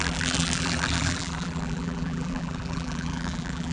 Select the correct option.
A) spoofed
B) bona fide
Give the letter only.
A